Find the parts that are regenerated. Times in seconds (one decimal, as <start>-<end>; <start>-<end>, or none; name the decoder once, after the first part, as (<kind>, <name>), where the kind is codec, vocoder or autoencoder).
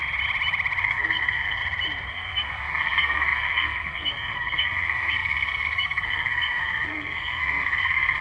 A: 0.8-1.6 (codec, SNAC); 2.1-8.2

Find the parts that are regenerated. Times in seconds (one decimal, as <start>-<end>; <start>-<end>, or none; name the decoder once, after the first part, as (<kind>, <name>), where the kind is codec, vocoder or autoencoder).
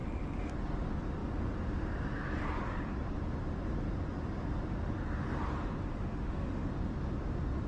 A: 5.9-6.7 (autoencoder, DAC-VAE)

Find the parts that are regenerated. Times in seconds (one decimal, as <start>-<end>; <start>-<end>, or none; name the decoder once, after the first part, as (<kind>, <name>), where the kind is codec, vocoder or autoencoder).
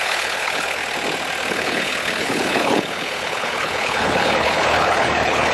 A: 0.0-0.8 (codec, HILCodec); 1.5-5.5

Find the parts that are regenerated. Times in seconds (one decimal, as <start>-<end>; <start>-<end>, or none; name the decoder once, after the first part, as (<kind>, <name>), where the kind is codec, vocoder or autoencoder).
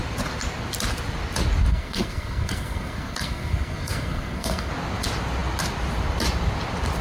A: 1.7-4.7 (codec, SNAC)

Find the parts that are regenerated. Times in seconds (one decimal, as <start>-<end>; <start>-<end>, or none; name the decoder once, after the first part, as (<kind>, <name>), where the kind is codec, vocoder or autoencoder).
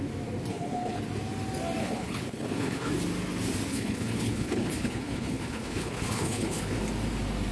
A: 0.5-1.0 (codec, HILCodec); 1.8-2.9; 3.7-6.8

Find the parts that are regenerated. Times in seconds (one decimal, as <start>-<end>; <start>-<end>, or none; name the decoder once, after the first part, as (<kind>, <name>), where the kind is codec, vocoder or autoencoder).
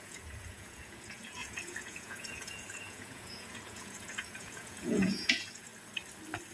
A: 0.0-5.7 (vocoder, Vocos)